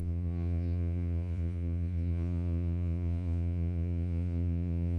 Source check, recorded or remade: remade